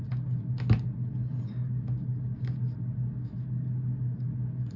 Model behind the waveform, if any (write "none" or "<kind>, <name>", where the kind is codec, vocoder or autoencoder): none